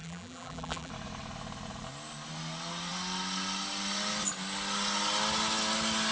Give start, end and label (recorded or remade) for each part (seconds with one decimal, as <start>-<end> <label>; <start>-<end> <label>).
0.0-0.9 remade; 0.9-6.1 recorded